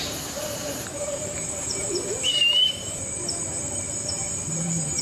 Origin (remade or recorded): remade